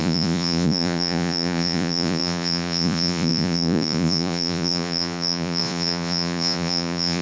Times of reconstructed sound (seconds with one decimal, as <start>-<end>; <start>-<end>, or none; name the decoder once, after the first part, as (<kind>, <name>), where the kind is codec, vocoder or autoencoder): 0.0-7.2 (vocoder, Vocos)

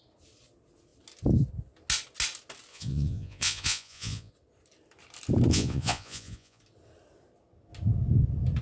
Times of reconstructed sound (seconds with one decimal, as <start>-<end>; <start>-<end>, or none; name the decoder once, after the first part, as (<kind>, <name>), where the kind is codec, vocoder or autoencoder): 2.7-4.3 (vocoder, Vocos); 5.5-6.6

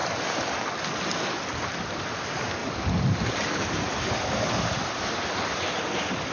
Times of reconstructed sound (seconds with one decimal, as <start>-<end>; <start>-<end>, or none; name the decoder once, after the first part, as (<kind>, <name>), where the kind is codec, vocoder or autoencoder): none

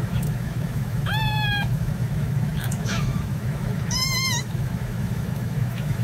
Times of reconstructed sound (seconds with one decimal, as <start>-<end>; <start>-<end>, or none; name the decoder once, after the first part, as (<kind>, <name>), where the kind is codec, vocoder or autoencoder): 0.0-6.0 (autoencoder, DAC-VAE)

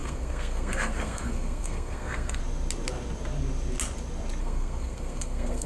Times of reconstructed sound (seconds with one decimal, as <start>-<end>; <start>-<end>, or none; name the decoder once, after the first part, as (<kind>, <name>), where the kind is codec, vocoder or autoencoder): 0.0-2.4 (codec, SNAC); 4.4-5.7

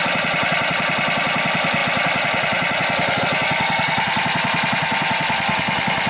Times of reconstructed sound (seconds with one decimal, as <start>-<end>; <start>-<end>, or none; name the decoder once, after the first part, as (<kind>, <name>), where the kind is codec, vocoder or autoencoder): none